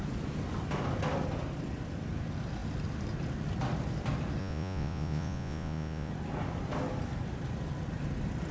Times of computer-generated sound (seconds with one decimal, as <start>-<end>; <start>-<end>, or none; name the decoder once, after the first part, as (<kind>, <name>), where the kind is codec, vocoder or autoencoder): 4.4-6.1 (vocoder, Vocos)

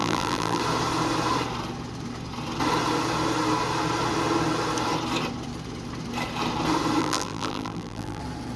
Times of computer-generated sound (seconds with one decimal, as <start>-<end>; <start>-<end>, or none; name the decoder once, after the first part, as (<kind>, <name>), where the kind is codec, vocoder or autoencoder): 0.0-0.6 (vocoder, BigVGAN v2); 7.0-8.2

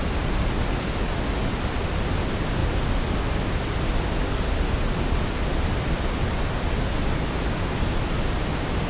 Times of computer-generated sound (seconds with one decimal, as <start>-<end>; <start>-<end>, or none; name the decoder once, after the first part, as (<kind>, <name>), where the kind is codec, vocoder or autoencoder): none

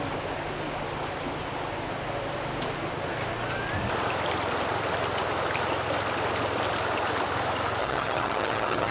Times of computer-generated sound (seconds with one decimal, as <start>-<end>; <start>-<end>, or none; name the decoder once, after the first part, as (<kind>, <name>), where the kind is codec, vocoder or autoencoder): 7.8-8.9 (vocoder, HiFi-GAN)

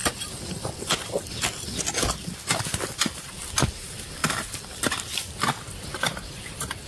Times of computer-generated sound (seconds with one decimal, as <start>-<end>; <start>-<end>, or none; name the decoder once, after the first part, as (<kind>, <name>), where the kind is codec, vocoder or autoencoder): 0.0-0.7 (vocoder, BigVGAN v2)

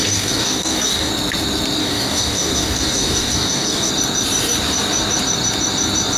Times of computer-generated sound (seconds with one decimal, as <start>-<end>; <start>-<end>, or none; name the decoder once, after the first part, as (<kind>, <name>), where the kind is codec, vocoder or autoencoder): 0.0-1.1 (codec, DAC); 1.8-3.9

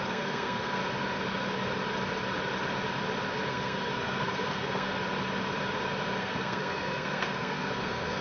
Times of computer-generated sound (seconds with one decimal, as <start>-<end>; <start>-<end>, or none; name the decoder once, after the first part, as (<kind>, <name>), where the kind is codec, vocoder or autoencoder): 0.0-0.8 (codec, SNAC); 3.5-4.9; 6.2-8.2

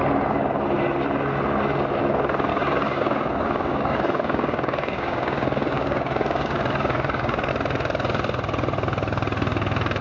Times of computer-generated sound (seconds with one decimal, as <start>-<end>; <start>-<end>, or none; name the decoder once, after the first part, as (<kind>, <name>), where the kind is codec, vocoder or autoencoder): 2.5-7.5 (codec, DAC)